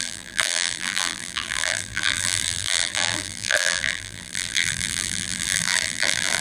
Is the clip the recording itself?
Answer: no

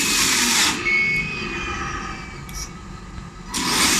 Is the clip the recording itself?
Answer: yes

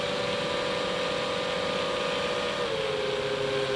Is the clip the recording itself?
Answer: yes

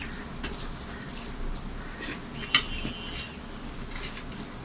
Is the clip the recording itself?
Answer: yes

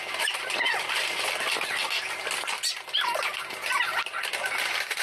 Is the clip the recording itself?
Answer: yes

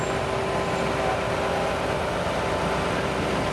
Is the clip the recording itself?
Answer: yes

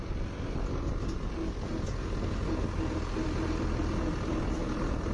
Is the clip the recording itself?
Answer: yes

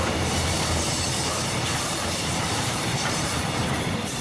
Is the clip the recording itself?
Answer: no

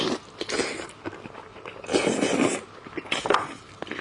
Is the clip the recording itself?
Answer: yes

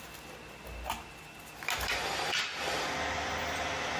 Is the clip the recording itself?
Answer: yes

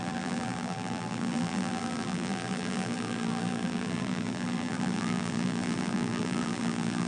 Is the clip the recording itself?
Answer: no